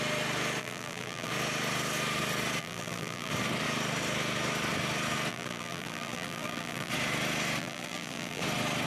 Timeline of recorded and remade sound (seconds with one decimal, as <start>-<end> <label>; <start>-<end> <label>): 0.0-0.6 recorded; 0.6-1.3 remade; 1.3-2.6 recorded; 2.6-3.3 remade; 3.3-5.3 recorded; 5.3-6.9 remade; 6.9-7.6 recorded; 7.6-8.4 remade; 8.4-8.9 recorded